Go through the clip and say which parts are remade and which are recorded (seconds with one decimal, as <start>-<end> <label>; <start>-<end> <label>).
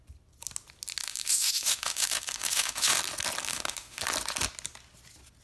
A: 0.0-1.0 recorded; 1.0-3.0 remade; 3.0-3.4 recorded; 3.4-4.0 remade; 4.0-5.4 recorded